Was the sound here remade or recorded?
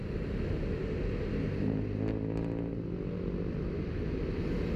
recorded